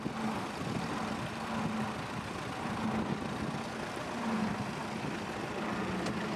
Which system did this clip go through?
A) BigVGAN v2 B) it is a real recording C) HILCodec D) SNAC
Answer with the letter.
B